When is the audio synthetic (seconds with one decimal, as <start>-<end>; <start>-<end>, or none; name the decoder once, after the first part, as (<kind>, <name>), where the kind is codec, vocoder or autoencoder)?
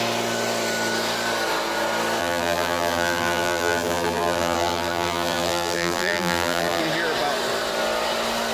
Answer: 2.2-6.8 (vocoder, BigVGAN v2)